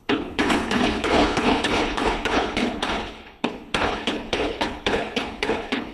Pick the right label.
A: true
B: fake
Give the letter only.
B